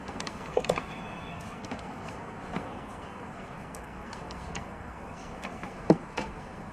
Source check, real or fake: fake